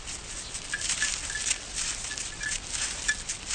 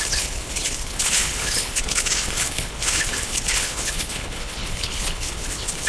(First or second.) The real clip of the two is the first